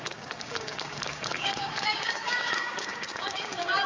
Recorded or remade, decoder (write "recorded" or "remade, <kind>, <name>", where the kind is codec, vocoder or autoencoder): remade, codec, DAC